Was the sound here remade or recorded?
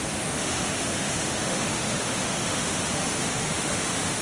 remade